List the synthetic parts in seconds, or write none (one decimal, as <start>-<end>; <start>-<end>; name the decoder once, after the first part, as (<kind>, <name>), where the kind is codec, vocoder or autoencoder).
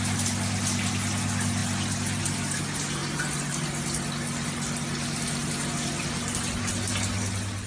none